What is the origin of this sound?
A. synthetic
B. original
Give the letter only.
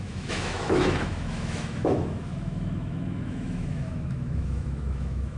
A